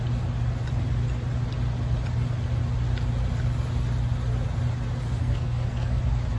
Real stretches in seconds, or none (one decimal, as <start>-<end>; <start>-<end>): 0.0-5.2; 6.0-6.4